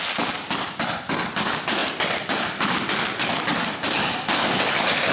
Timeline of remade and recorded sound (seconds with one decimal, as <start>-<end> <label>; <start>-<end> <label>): 0.0-5.1 recorded